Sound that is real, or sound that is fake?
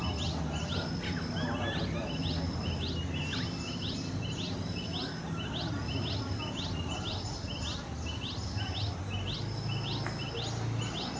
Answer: real